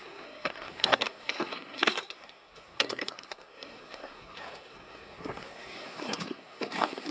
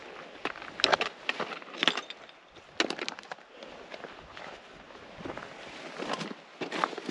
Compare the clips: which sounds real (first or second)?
second